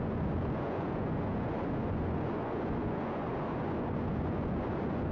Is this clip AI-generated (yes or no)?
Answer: yes